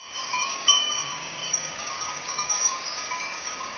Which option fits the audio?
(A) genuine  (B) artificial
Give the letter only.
B